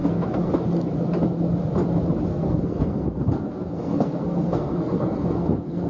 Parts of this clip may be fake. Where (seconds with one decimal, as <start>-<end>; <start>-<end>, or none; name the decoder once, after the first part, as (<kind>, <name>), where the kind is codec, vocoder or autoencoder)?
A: 0.0-0.5 (codec, SNAC); 2.3-5.9